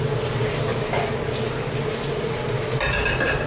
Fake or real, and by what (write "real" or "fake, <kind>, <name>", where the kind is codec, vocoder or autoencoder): real